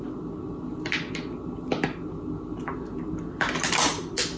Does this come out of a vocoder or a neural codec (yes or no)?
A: no